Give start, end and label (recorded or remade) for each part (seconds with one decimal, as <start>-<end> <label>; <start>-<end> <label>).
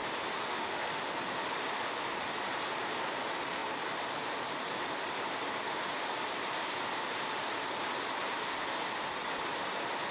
0.0-0.5 recorded; 0.5-1.1 remade; 1.1-10.1 recorded